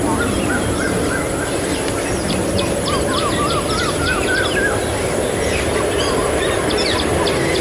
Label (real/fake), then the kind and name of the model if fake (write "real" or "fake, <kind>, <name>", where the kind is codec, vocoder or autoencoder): real